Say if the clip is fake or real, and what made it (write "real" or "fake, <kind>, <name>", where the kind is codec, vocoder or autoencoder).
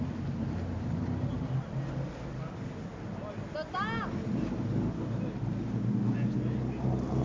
real